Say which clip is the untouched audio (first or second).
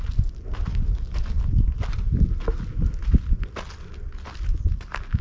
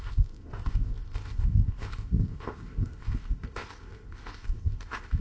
first